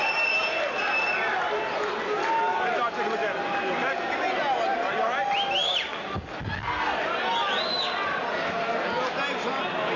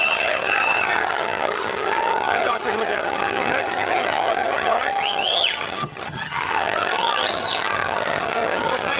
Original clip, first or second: first